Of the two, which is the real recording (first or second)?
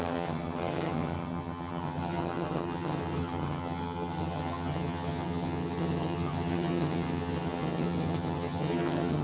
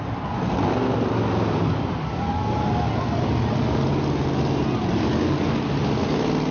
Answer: second